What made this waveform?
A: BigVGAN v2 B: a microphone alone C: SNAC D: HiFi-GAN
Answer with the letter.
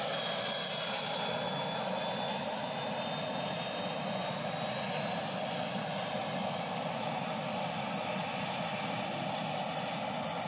B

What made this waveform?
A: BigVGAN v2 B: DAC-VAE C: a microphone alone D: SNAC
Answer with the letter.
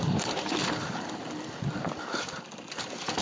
C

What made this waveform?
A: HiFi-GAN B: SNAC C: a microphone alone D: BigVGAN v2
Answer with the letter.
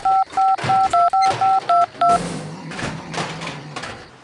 C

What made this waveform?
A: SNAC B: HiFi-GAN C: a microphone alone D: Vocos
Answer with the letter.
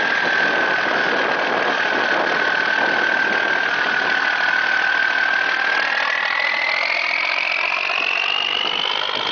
C